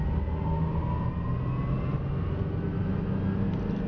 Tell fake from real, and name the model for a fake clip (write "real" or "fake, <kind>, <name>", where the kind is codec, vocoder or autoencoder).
real